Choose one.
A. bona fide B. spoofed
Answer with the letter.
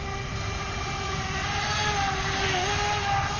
A